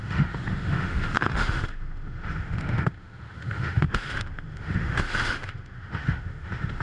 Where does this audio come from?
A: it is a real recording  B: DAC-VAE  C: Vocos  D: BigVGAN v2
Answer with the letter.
B